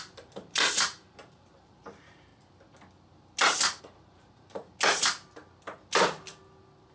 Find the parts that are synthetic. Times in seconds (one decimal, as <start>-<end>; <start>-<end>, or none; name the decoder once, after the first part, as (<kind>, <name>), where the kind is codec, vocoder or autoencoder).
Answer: 0.0-2.3 (vocoder, BigVGAN v2); 3.8-4.6